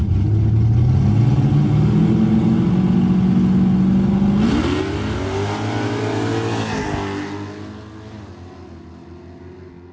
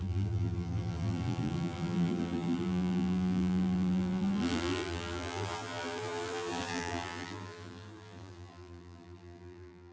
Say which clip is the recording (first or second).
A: first